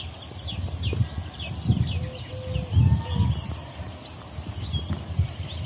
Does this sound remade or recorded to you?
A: recorded